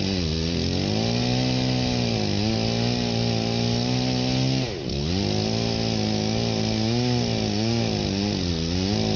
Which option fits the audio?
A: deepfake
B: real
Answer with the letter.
B